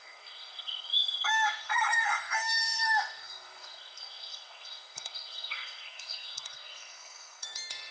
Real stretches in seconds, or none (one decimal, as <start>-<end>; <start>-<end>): none